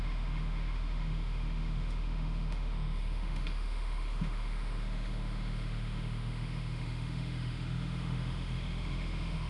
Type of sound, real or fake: fake